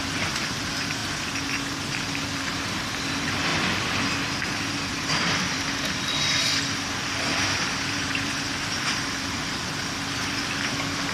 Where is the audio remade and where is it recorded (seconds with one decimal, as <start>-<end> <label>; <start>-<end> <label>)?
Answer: 0.0-1.0 remade; 1.0-1.9 recorded; 1.9-3.5 remade; 3.5-4.7 recorded; 4.7-11.1 remade